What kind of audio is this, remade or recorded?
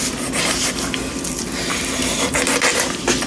recorded